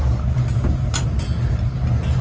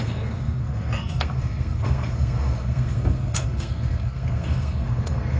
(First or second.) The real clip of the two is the first